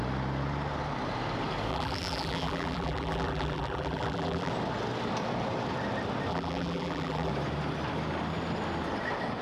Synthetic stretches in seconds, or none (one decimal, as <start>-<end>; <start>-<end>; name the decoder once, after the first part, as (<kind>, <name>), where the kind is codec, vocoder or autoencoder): 1.7-4.5 (vocoder, BigVGAN v2); 6.3-7.3